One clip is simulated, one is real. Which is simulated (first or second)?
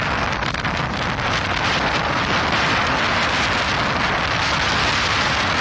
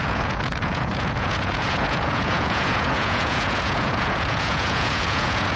second